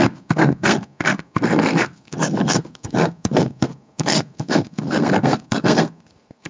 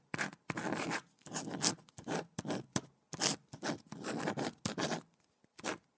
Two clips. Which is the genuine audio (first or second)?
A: second